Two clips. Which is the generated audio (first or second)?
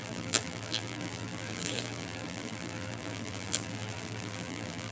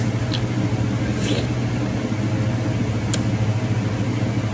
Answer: first